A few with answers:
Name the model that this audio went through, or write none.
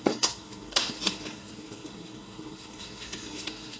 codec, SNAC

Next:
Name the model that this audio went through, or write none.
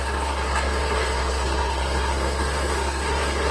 codec, SNAC